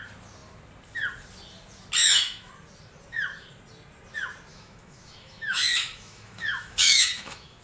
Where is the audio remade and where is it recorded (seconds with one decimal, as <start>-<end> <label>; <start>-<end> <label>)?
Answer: 0.0-2.0 recorded; 2.0-2.5 remade; 2.5-4.5 recorded; 4.5-7.6 remade

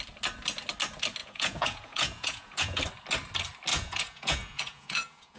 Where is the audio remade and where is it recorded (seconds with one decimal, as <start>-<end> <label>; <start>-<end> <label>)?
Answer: 0.0-1.2 recorded; 1.2-2.8 remade; 2.8-3.7 recorded; 3.7-5.4 remade

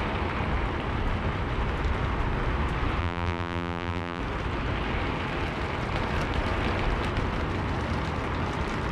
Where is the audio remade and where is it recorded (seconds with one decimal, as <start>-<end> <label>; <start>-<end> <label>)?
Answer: 0.0-3.0 recorded; 3.0-4.2 remade; 4.2-8.9 recorded

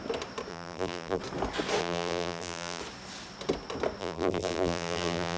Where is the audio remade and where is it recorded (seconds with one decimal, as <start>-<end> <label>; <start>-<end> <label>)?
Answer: 0.0-0.5 recorded; 0.5-1.2 remade; 1.2-1.8 recorded; 1.8-2.8 remade; 2.8-4.0 recorded; 4.0-5.4 remade

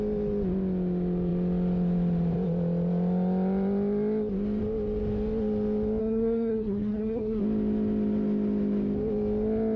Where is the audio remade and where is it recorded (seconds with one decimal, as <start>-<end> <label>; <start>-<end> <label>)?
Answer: 0.0-6.0 recorded; 6.0-7.4 remade; 7.4-9.8 recorded

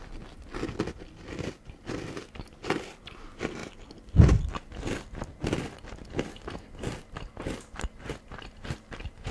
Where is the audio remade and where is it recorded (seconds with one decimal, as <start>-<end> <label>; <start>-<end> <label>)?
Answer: 0.0-9.3 recorded